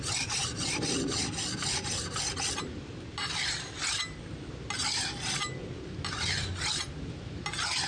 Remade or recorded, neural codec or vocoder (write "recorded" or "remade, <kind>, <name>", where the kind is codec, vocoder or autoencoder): recorded